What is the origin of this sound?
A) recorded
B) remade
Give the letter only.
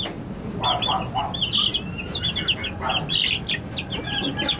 A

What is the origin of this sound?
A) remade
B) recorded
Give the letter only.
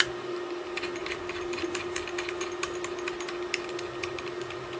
B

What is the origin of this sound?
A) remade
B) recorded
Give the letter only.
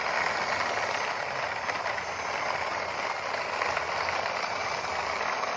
B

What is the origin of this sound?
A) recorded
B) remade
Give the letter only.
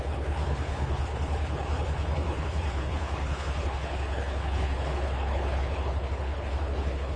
B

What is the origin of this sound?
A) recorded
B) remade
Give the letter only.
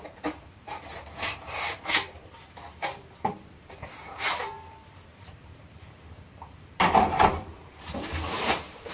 B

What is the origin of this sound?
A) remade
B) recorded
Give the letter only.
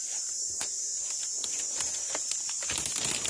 B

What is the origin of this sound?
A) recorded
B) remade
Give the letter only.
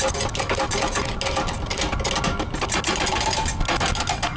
A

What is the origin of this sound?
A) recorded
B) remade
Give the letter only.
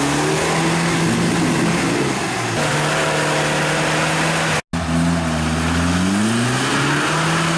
A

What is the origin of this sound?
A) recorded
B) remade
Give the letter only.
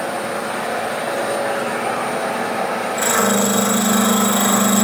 A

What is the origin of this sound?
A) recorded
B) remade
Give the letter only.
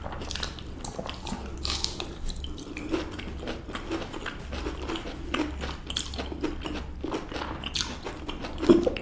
A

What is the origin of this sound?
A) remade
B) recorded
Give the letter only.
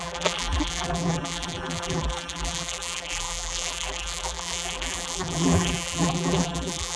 A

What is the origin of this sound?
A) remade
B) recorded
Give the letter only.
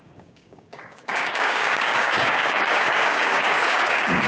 A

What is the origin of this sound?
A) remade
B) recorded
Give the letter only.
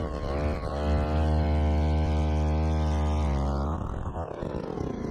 B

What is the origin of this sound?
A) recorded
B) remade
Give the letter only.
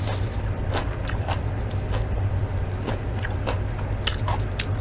A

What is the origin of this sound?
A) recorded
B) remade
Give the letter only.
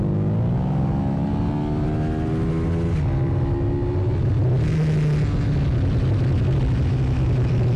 A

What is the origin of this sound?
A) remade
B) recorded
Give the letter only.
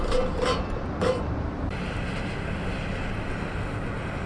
B